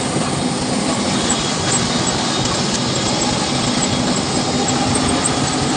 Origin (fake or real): real